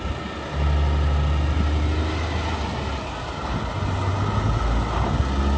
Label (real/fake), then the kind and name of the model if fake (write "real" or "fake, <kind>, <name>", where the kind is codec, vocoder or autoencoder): real